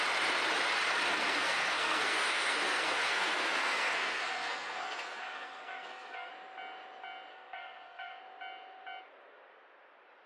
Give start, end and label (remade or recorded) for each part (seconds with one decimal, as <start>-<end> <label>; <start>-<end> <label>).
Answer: 0.0-1.1 recorded; 1.1-6.3 remade; 6.3-7.3 recorded; 7.3-8.2 remade; 8.2-10.3 recorded